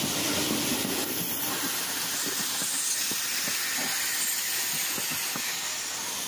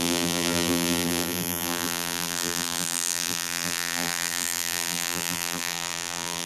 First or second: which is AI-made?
second